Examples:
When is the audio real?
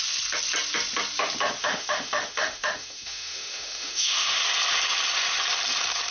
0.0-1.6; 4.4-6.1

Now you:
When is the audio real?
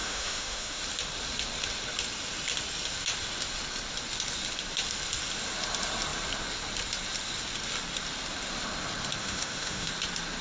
0.8-9.2; 9.9-10.4